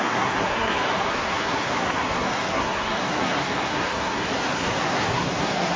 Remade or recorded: remade